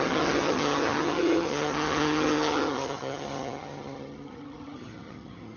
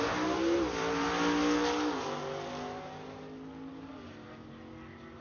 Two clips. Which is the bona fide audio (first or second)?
second